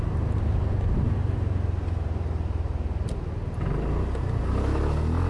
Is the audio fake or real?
real